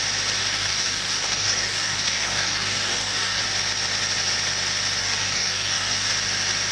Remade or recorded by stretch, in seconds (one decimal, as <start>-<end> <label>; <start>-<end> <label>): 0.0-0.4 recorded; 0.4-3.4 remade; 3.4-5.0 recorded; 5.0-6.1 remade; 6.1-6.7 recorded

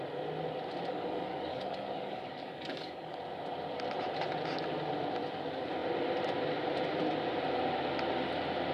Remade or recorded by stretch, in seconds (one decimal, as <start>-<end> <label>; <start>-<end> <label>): 0.0-0.9 recorded; 0.9-3.2 remade; 3.2-8.7 recorded

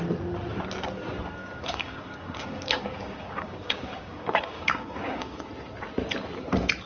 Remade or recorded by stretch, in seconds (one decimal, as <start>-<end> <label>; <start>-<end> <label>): 0.0-1.4 recorded; 1.4-5.5 remade; 5.5-6.9 recorded